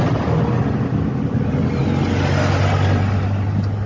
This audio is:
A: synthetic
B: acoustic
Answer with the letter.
B